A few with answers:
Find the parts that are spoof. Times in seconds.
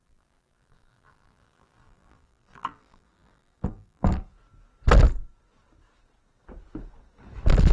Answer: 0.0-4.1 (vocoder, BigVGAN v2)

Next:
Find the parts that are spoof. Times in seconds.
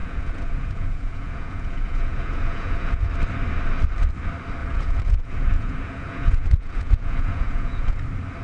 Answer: 0.0-3.1 (vocoder, Vocos); 4.6-8.0